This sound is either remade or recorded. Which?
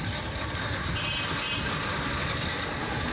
recorded